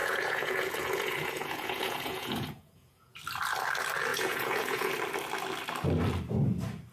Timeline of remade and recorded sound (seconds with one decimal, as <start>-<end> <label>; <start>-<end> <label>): 0.0-3.2 remade; 3.2-4.1 recorded; 4.1-4.9 remade; 4.9-6.9 recorded